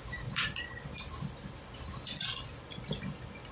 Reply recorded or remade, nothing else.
recorded